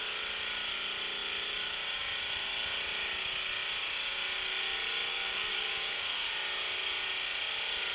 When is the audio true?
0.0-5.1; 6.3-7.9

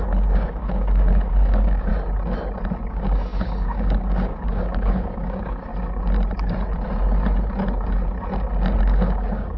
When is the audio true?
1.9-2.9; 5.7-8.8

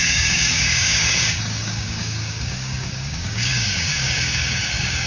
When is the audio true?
none

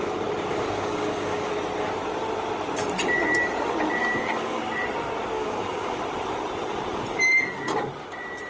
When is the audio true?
0.0-0.5; 1.5-4.0; 4.6-5.3; 6.0-8.5